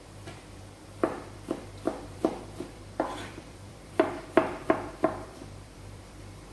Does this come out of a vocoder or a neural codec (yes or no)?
yes